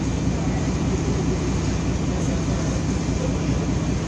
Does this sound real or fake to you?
real